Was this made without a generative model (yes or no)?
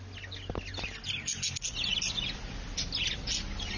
yes